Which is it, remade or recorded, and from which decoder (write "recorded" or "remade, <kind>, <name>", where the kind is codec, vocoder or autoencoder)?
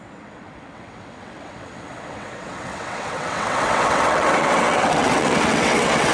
remade, vocoder, WaveNeXt